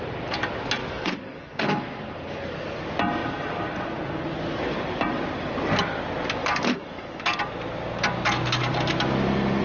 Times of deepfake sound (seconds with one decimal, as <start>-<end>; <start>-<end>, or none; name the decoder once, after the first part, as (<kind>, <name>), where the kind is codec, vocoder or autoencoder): 0.8-2.0 (codec, DAC); 6.4-7.4